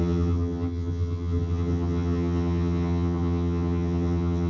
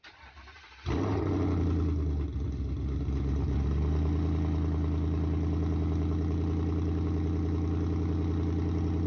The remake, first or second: first